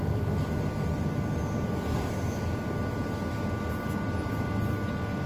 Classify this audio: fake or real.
real